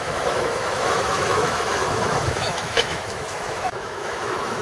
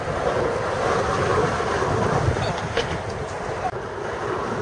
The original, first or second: second